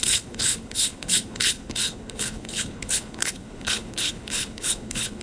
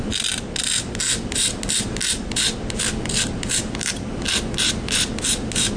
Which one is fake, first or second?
first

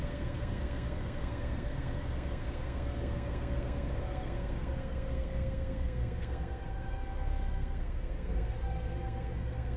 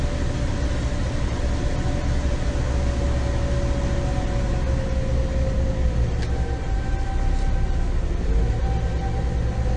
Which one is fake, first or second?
first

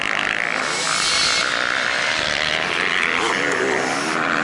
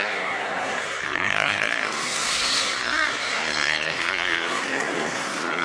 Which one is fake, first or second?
second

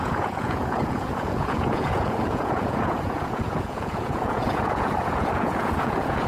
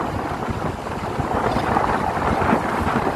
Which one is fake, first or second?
first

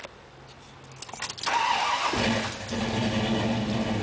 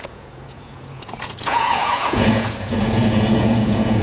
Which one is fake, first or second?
second